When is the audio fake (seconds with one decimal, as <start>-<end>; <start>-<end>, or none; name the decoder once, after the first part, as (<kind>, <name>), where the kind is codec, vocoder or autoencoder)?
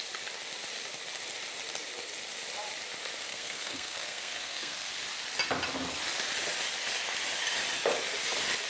3.3-4.9 (codec, SNAC)